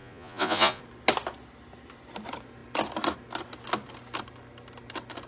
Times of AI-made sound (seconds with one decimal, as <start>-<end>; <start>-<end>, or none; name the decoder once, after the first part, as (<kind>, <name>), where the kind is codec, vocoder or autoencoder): 0.0-0.8 (vocoder, Vocos)